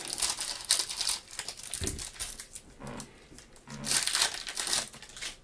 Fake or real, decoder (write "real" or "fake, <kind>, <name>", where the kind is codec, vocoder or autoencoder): real